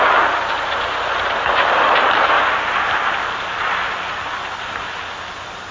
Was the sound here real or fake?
real